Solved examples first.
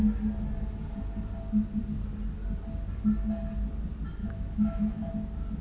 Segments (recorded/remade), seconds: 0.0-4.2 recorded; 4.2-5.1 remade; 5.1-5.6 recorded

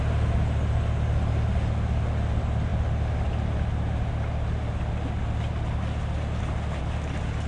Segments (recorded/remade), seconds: 0.0-7.5 recorded

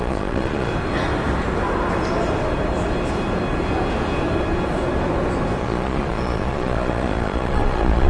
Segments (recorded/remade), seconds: 0.0-0.7 remade; 0.7-5.6 recorded; 5.6-8.1 remade